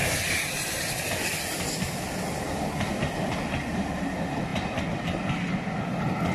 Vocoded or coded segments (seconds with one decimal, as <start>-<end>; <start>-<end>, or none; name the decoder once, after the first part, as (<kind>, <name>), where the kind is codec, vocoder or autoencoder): none